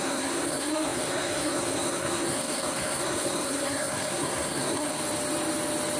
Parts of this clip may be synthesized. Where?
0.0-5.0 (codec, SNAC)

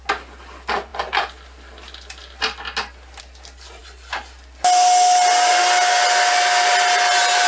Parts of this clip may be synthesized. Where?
none